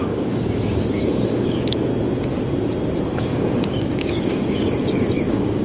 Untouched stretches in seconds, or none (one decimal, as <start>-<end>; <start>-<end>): 1.9-3.2